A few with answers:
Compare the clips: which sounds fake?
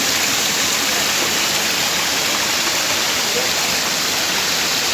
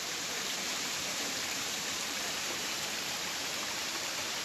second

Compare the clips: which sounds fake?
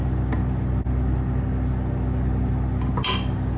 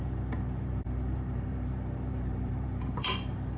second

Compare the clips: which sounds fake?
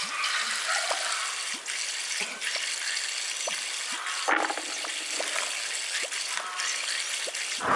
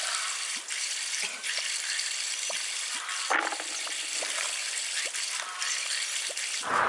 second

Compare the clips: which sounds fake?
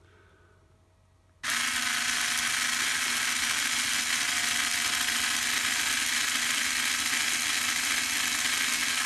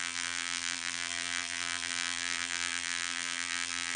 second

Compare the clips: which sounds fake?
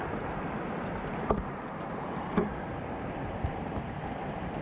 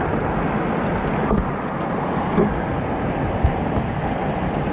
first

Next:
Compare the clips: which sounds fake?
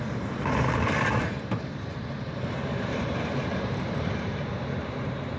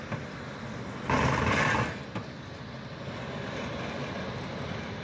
first